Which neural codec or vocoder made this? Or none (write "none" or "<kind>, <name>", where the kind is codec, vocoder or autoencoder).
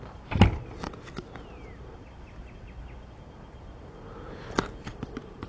none